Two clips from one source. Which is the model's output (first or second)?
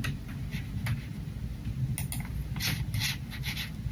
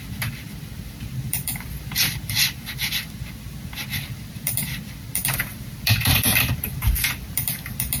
second